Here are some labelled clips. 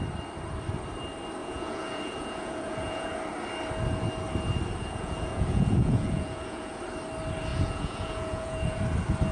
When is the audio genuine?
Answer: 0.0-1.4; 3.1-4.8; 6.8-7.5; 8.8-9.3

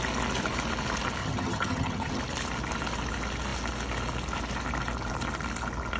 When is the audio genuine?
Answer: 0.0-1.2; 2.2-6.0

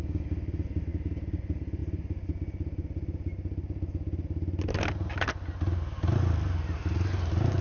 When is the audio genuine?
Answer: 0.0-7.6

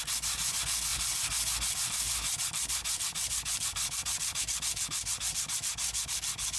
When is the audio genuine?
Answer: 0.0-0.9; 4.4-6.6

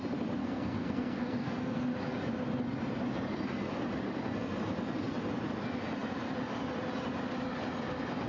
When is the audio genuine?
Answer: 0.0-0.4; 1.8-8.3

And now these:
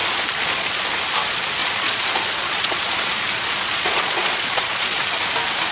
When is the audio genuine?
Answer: 0.8-1.6; 5.0-5.7

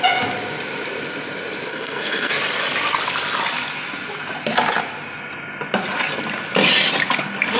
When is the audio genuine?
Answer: 0.0-1.7; 2.3-7.6

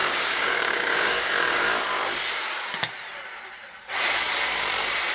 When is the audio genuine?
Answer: 1.8-5.1